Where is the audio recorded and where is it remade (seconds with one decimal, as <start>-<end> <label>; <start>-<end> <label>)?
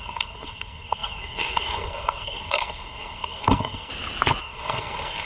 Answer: 0.0-3.9 remade; 3.9-4.4 recorded; 4.4-5.3 remade